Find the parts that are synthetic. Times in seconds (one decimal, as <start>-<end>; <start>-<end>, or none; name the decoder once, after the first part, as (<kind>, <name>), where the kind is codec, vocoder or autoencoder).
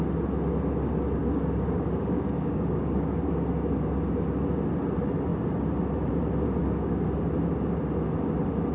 1.2-3.3 (codec, DAC); 6.6-7.3